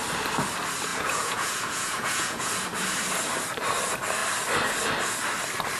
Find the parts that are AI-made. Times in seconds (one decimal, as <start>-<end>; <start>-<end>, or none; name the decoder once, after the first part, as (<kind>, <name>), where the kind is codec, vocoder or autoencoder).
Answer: 0.9-2.5 (vocoder, Vocos)